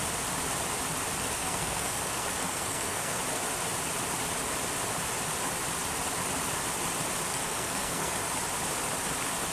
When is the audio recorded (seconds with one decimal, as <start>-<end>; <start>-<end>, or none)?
0.0-1.4; 3.2-7.3; 8.2-9.5